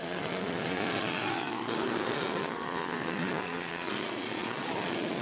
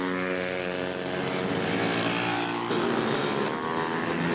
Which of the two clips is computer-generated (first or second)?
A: first